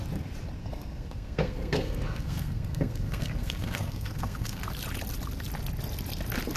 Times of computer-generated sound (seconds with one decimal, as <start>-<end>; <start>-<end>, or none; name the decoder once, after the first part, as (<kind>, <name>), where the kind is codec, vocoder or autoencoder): 0.6-4.6 (codec, SNAC)